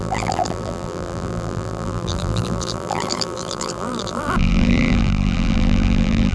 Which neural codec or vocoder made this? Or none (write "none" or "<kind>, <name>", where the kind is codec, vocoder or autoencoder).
vocoder, BigVGAN v2